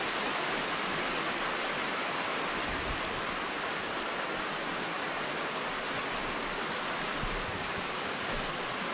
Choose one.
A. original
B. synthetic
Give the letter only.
A